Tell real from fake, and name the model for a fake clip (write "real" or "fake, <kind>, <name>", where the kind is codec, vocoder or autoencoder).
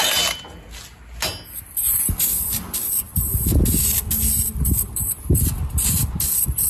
real